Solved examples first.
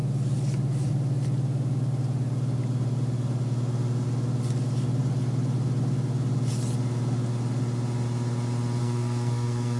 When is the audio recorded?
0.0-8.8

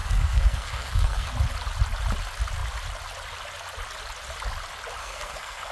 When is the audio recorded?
1.3-5.0

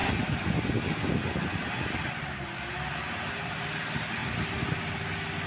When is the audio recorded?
0.0-5.5